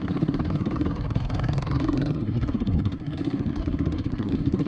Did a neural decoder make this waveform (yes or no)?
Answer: yes